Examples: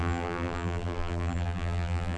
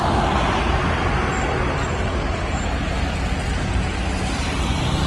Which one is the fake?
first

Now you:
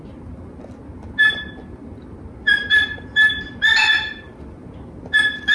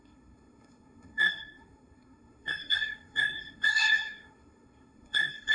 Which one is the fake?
second